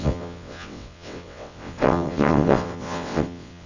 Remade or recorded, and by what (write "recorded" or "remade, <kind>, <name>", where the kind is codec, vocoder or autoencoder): remade, vocoder, WaveNeXt